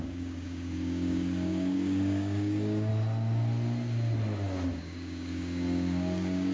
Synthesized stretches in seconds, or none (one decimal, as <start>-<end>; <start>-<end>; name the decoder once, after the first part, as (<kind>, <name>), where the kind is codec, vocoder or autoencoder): 0.0-2.9 (codec, DAC); 4.7-6.5